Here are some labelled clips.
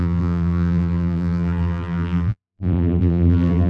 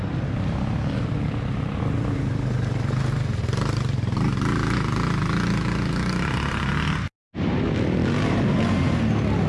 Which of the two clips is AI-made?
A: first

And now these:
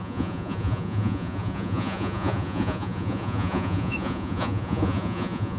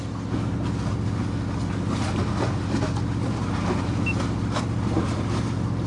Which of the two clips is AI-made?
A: first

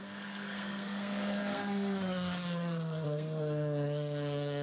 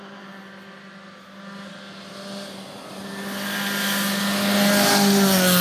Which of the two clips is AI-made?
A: first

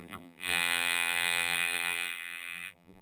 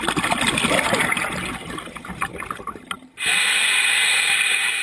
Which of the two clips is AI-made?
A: first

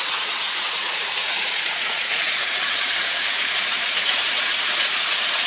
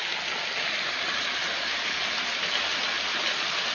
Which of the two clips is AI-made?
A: first